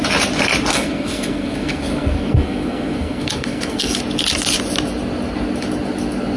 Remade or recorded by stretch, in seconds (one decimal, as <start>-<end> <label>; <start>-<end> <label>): 0.0-0.7 recorded; 0.7-4.0 remade; 4.0-6.4 recorded